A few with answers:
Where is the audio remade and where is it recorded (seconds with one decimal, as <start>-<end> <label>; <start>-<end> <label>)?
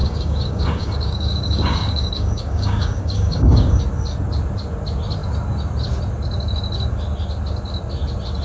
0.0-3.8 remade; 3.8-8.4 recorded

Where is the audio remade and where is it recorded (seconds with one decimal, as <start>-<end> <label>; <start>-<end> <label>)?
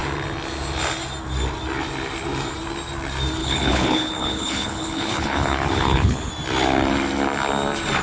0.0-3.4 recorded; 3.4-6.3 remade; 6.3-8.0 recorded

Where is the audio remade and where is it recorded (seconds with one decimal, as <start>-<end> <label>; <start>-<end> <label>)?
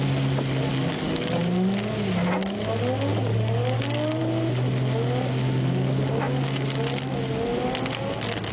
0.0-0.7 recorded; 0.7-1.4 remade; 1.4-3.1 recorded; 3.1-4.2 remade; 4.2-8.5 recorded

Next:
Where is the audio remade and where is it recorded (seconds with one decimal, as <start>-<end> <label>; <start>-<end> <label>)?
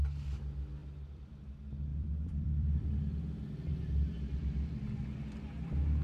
0.0-0.8 recorded; 0.8-1.4 remade; 1.4-1.9 recorded; 1.9-3.0 remade; 3.0-6.0 recorded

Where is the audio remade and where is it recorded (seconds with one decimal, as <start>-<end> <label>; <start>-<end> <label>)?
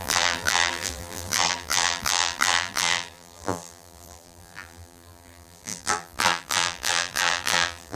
0.0-7.9 remade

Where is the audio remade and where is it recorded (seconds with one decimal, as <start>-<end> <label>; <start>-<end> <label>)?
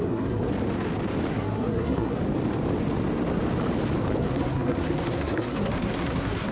0.0-0.5 remade; 0.5-1.3 recorded; 1.3-2.2 remade; 2.2-4.2 recorded; 4.2-6.5 remade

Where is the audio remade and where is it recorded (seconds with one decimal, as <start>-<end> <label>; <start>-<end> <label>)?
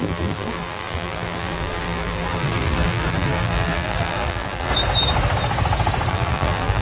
0.0-4.7 remade; 4.7-6.1 recorded; 6.1-6.8 remade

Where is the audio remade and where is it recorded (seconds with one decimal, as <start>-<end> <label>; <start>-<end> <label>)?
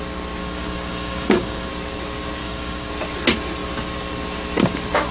0.0-0.4 recorded; 0.4-1.7 remade; 1.7-2.4 recorded; 2.4-2.9 remade; 2.9-5.1 recorded